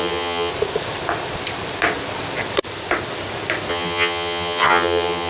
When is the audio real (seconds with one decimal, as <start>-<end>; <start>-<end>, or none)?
0.5-3.7